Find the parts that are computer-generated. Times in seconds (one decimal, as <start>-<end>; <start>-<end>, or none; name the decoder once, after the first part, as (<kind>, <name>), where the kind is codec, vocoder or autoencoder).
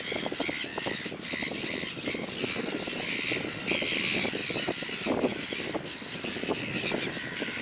none